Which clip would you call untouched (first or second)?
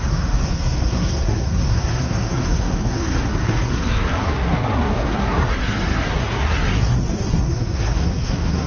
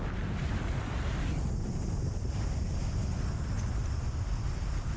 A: second